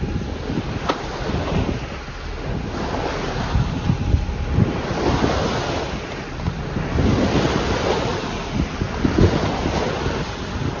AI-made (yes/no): no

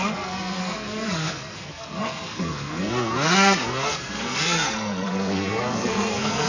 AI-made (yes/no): yes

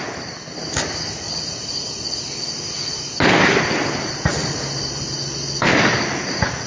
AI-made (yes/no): no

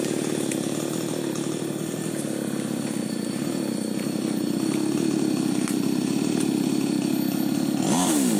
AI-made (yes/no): no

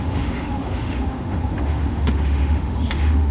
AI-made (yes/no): yes